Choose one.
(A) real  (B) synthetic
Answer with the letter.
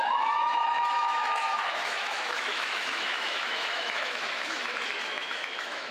B